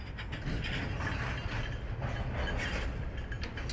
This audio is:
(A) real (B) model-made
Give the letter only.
A